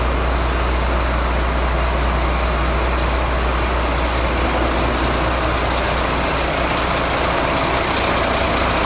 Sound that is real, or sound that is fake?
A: real